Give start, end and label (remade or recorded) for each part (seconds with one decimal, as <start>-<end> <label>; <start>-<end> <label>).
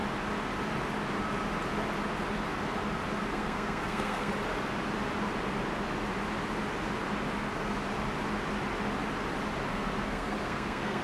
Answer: 0.0-3.3 recorded; 3.3-4.3 remade; 4.3-9.7 recorded; 9.7-11.0 remade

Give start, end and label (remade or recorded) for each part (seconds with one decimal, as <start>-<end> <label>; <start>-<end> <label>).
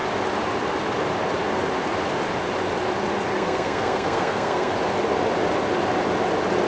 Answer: 0.0-3.3 recorded; 3.3-4.7 remade; 4.7-6.7 recorded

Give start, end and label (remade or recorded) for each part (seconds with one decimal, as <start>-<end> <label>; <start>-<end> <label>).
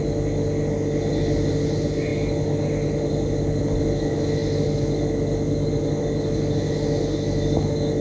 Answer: 0.0-8.0 recorded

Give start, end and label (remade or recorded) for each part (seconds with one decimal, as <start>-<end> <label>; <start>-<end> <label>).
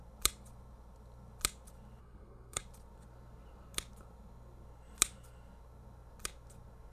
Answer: 0.0-2.0 recorded; 2.0-2.6 remade; 2.6-6.9 recorded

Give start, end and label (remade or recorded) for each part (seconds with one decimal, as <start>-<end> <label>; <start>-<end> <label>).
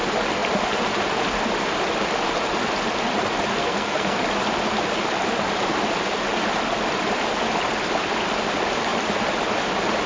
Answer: 0.0-3.5 recorded; 3.5-4.2 remade; 4.2-10.1 recorded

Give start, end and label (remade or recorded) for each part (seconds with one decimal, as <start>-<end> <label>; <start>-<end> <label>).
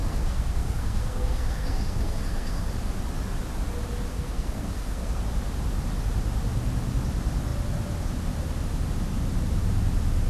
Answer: 0.0-2.7 remade; 2.7-4.1 recorded; 4.1-5.2 remade; 5.2-10.3 recorded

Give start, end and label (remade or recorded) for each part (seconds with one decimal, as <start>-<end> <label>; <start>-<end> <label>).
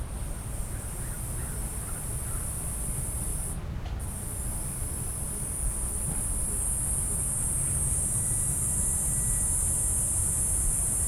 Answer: 0.0-11.1 recorded